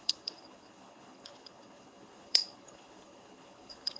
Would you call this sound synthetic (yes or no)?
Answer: yes